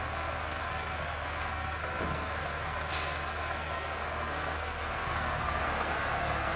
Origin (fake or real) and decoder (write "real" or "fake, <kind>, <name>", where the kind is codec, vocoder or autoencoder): fake, codec, SNAC